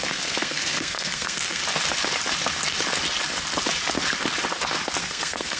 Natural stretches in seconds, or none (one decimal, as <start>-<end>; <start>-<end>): 1.6-5.0